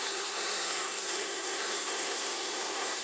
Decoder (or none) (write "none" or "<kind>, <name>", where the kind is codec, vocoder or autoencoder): codec, SNAC